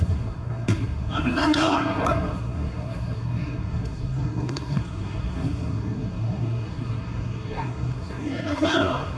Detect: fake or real fake